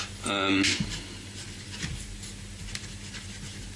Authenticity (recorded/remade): recorded